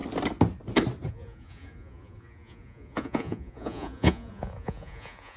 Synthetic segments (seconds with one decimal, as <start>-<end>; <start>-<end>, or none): 1.1-5.4